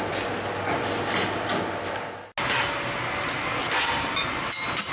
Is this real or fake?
real